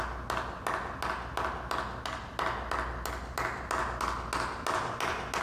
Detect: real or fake real